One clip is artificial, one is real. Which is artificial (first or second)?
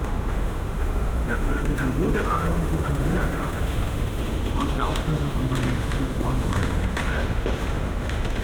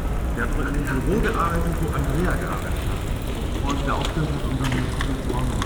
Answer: first